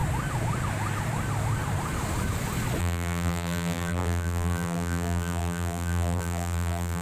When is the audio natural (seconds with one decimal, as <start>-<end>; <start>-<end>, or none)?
0.0-2.8